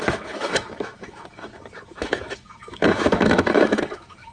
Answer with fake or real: fake